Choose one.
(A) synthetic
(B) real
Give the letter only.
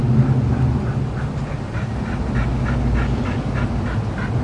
B